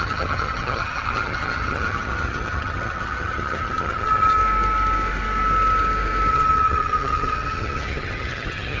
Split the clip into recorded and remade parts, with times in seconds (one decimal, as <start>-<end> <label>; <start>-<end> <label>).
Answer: 0.0-4.4 remade; 4.4-6.3 recorded; 6.3-8.8 remade